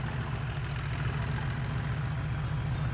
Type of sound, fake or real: real